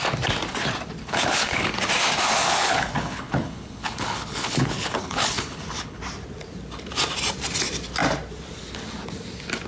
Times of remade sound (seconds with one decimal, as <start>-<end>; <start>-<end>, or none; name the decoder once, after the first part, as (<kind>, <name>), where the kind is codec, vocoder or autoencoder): 1.0-1.6 (codec, HILCodec); 2.5-6.0